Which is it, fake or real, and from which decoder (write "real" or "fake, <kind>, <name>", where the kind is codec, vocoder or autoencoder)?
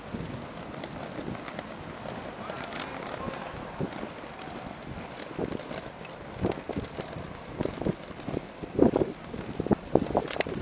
real